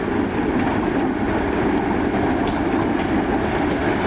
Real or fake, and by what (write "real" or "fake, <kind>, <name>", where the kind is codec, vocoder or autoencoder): real